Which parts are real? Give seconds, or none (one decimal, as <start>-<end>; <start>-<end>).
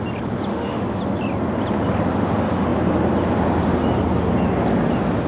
0.0-0.5; 1.0-5.3